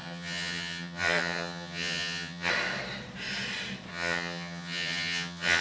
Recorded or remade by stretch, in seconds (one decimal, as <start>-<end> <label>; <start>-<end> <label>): 0.0-2.5 remade; 2.5-3.9 recorded; 3.9-5.6 remade